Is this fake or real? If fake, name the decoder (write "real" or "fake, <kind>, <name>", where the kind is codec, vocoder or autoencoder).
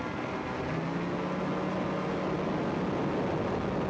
real